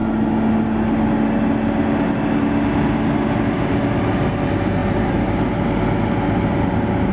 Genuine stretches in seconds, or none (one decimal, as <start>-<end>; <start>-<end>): 0.0-4.8; 5.5-7.1